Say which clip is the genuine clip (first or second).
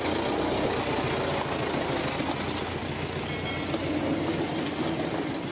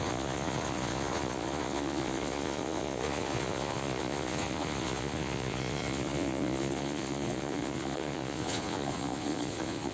first